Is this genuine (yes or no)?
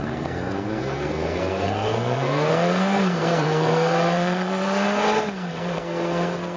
no